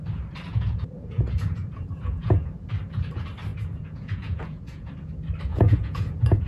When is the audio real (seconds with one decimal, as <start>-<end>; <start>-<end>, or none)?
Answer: 0.0-0.5; 2.7-3.5; 4.9-5.5